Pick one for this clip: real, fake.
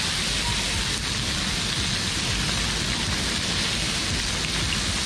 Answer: real